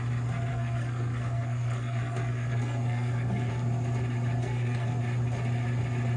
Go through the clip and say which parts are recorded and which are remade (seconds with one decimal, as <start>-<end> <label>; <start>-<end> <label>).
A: 0.0-0.5 recorded; 0.5-3.5 remade; 3.5-4.4 recorded; 4.4-5.0 remade; 5.0-6.2 recorded